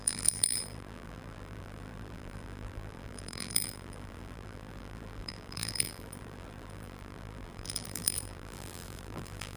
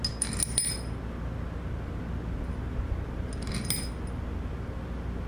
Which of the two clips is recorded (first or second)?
second